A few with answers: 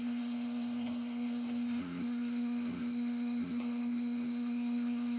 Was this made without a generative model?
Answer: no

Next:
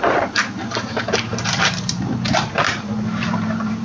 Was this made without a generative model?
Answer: no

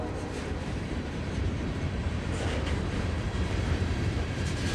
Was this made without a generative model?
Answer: no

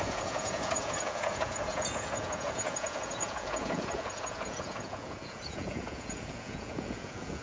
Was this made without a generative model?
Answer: no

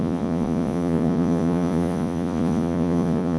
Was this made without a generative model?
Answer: no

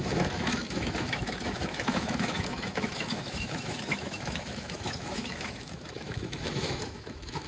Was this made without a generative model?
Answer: no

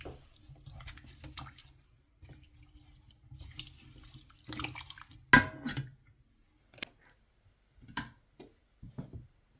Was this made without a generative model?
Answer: yes